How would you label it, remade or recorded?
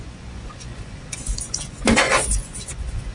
remade